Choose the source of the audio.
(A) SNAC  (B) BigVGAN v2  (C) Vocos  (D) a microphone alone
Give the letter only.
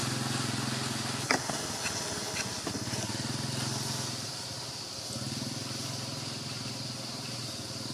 D